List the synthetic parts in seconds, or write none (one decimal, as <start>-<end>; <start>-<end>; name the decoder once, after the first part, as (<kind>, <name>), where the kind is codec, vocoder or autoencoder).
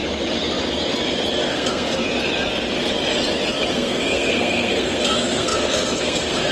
1.5-2.0 (codec, SNAC); 3.7-6.5